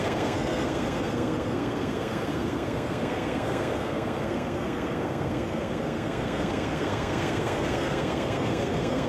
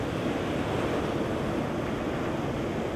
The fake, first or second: first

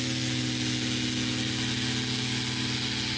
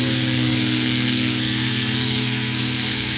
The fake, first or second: second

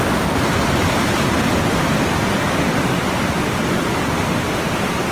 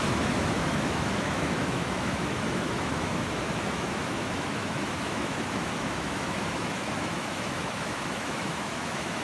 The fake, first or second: second